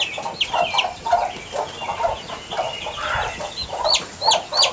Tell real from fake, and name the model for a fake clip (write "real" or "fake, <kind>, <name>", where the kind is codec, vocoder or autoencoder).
real